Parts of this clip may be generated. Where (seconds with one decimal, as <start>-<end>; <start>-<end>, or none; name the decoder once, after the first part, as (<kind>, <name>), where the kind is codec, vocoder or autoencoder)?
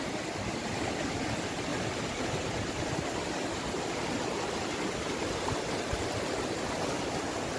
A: none